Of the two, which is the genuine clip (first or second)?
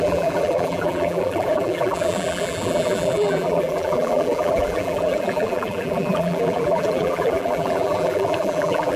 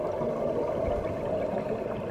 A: second